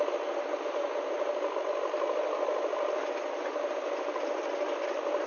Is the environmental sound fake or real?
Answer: real